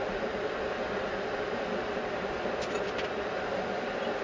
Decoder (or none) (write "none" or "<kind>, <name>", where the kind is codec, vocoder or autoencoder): none